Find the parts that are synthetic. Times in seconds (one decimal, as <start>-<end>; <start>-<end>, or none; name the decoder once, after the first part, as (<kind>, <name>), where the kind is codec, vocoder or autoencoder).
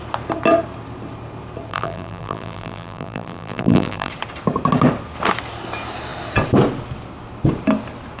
1.7-4.1 (vocoder, BigVGAN v2)